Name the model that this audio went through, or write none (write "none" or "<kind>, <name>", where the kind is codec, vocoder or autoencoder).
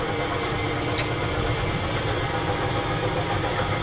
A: none